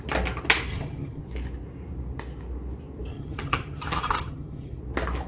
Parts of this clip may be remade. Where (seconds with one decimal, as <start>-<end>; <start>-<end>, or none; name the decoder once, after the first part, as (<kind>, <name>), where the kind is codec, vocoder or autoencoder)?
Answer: 0.7-1.2 (vocoder, HiFi-GAN); 3.1-4.8

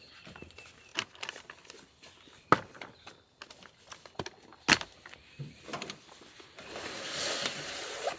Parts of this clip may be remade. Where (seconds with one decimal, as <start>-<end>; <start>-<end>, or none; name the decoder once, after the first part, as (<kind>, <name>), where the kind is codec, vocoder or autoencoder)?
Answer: none

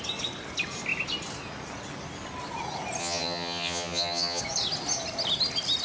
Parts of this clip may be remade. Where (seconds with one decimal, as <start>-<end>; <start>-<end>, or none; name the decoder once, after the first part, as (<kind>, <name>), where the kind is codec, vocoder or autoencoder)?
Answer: 3.0-4.4 (vocoder, HiFi-GAN)

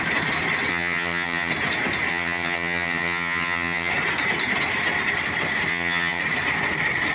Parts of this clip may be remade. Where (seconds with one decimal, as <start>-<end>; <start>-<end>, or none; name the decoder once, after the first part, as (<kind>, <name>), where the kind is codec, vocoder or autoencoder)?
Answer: 0.7-1.5 (vocoder, HiFi-GAN); 2.1-3.9; 5.7-6.2

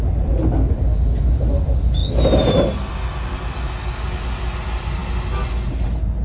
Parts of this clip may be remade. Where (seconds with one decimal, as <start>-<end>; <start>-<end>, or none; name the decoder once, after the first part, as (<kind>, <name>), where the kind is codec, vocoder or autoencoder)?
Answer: none